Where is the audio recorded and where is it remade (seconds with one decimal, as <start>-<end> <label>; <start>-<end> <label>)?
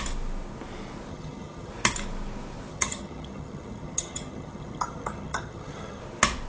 0.0-1.1 recorded; 1.1-1.7 remade; 1.7-2.7 recorded; 2.7-6.0 remade; 6.0-6.5 recorded